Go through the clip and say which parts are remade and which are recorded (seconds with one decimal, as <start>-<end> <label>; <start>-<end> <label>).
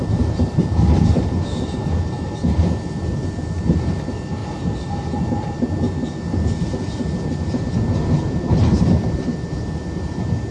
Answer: 0.0-10.5 recorded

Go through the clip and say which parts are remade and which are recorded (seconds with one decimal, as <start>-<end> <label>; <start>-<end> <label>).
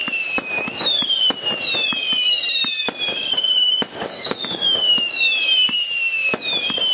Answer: 0.0-3.2 recorded; 3.2-5.3 remade; 5.3-6.9 recorded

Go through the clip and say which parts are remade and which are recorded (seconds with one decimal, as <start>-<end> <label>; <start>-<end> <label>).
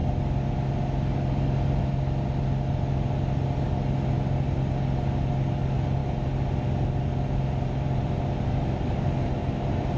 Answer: 0.0-10.0 recorded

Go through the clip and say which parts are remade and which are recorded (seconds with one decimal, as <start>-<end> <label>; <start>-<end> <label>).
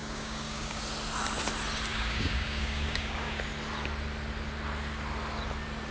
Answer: 0.0-0.8 remade; 0.8-1.9 recorded; 1.9-3.4 remade; 3.4-5.9 recorded